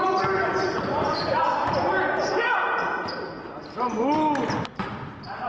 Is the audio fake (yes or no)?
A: no